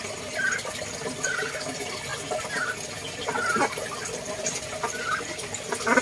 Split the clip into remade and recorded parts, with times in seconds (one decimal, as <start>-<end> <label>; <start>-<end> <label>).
0.0-6.0 recorded